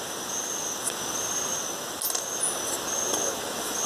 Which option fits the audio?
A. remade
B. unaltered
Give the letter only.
B